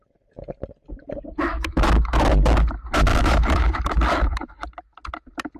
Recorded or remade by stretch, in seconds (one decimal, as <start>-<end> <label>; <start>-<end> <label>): 0.0-1.5 recorded; 1.5-2.3 remade; 2.3-3.1 recorded; 3.1-3.8 remade; 3.8-5.6 recorded